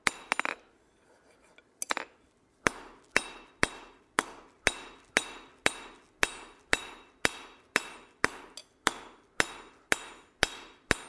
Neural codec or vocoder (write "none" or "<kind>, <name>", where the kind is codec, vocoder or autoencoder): none